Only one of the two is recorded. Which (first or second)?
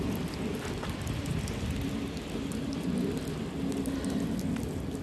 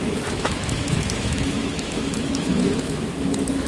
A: first